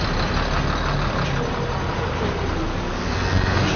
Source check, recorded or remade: recorded